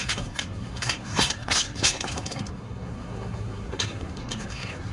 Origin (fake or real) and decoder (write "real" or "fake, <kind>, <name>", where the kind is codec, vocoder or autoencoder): fake, codec, SNAC